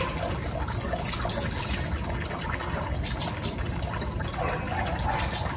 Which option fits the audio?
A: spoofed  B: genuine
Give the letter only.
B